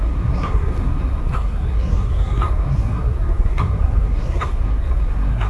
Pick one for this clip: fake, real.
fake